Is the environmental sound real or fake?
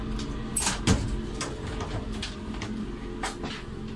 real